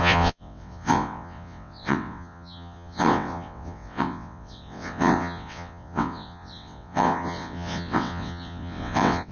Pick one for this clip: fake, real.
fake